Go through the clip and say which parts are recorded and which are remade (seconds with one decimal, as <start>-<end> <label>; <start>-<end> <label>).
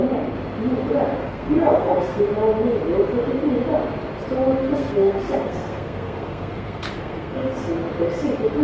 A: 0.0-1.2 recorded; 1.2-2.2 remade; 2.2-4.6 recorded; 4.6-7.7 remade; 7.7-8.6 recorded